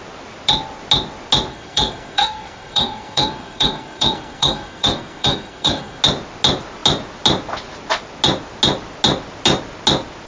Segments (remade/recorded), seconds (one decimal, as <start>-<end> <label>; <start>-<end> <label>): 0.0-1.5 recorded; 1.5-6.0 remade; 6.0-10.3 recorded